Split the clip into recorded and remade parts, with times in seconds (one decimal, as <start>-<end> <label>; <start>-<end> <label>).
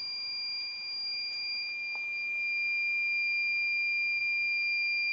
0.0-5.1 recorded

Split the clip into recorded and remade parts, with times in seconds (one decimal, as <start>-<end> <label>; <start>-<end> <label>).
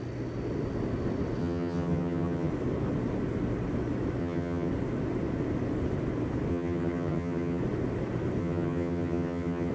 0.0-1.4 recorded; 1.4-2.5 remade; 2.5-4.2 recorded; 4.2-4.7 remade; 4.7-6.5 recorded; 6.5-7.6 remade; 7.6-8.4 recorded; 8.4-9.7 remade